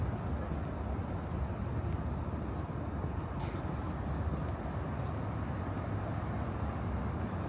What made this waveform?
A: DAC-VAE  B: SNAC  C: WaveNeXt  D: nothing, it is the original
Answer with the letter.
D